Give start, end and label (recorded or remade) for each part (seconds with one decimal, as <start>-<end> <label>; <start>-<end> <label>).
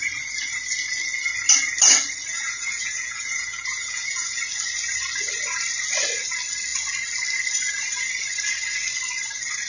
0.0-2.3 recorded; 2.3-4.4 remade; 4.4-9.7 recorded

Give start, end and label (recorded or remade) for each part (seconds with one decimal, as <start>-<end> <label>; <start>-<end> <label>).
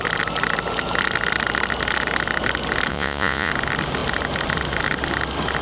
0.0-2.9 recorded; 2.9-3.5 remade; 3.5-5.6 recorded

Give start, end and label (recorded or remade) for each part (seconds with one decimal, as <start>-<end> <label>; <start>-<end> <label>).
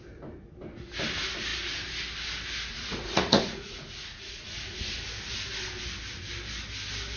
0.0-2.7 recorded; 2.7-5.1 remade; 5.1-7.2 recorded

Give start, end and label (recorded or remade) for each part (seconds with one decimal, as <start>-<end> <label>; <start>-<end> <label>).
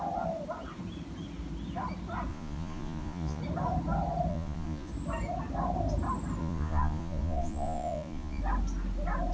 0.0-2.3 recorded; 2.3-3.4 remade; 3.4-4.3 recorded; 4.3-4.9 remade; 4.9-6.4 recorded; 6.4-8.4 remade; 8.4-9.3 recorded